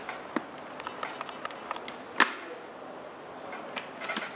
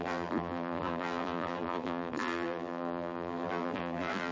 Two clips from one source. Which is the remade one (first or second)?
second